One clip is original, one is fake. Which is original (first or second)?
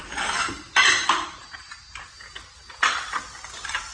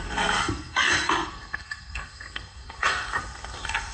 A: first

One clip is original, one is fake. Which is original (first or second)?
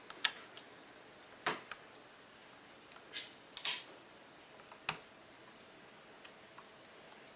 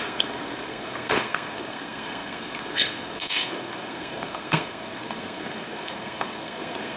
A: first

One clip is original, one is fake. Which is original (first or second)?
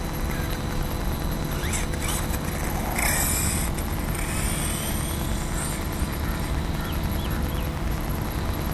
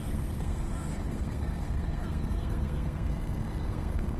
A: first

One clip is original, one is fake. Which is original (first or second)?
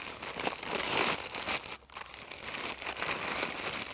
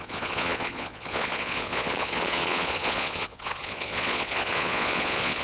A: first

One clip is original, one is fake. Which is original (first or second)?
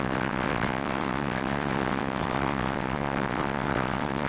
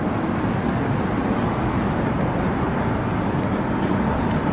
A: second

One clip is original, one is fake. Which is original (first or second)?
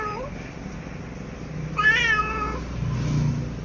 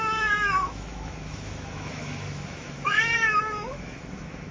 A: first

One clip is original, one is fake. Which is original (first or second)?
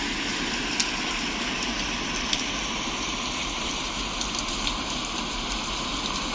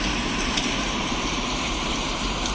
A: first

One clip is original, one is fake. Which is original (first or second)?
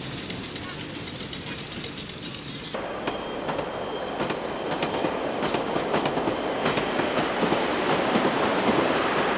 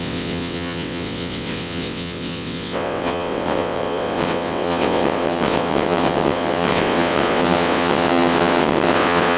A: first